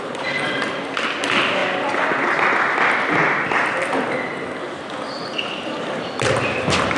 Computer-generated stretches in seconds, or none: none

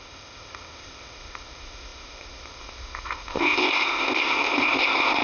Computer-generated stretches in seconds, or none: 0.0-5.2 (codec, ZipCodec)

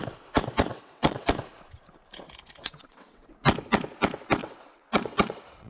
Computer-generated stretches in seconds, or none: 0.7-1.3 (vocoder, WaveNeXt); 2.6-3.3; 4.4-5.7

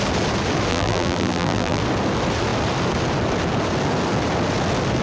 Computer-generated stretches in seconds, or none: 0.7-1.8 (vocoder, BigVGAN v2)

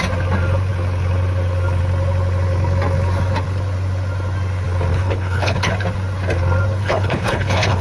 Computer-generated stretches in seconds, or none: 4.9-5.7 (codec, HILCodec); 6.8-7.8

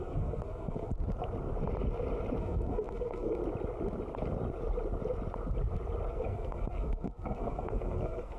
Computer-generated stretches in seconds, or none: 0.0-0.9 (codec, SNAC); 2.4-3.4; 6.1-8.4

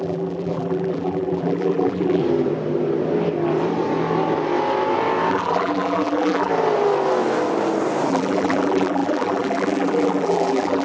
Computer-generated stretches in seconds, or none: 0.0-2.2 (vocoder, BigVGAN v2); 5.3-6.5; 8.1-10.8